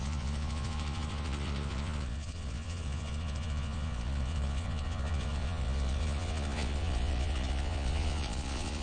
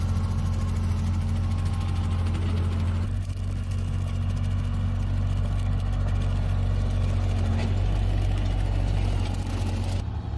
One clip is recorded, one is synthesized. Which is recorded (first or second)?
second